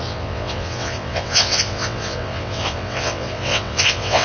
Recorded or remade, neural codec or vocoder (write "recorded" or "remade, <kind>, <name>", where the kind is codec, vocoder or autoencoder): remade, vocoder, WaveNeXt